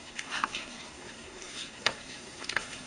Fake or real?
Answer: fake